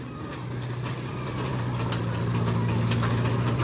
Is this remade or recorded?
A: remade